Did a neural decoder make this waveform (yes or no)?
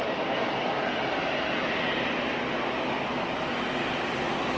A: no